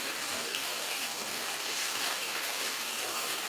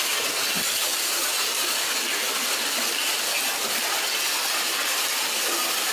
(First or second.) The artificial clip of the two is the first